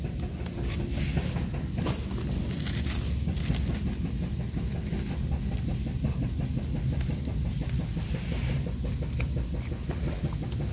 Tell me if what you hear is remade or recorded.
recorded